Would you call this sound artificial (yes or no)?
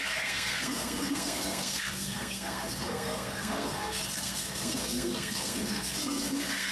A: yes